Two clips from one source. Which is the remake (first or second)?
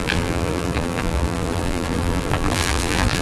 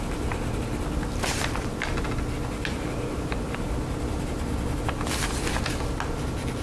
first